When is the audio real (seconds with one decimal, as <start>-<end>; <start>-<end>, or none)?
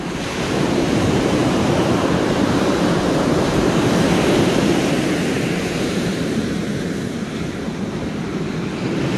none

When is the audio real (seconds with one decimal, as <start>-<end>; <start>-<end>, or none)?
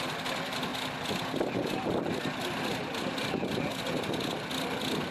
0.0-5.1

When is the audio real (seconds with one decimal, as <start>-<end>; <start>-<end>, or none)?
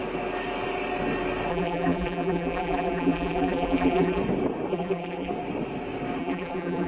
0.0-1.5; 4.2-4.7; 5.3-6.2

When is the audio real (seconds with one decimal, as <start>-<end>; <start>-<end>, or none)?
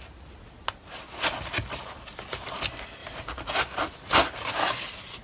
0.0-4.2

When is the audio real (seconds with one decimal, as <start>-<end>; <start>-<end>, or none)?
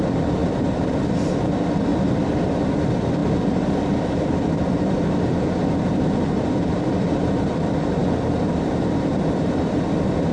0.4-1.2; 1.9-2.7; 3.2-6.4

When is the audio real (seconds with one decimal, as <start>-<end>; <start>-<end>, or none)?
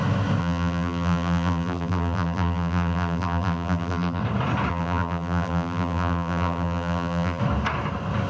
0.0-0.4; 4.2-4.7; 7.4-8.3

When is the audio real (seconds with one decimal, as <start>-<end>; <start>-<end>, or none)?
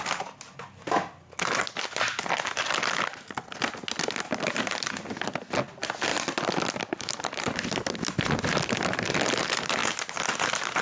0.0-6.1; 9.1-9.8